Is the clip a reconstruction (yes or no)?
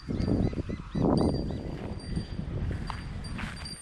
no